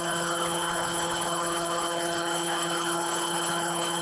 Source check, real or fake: fake